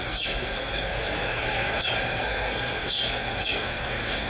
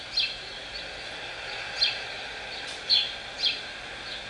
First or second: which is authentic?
second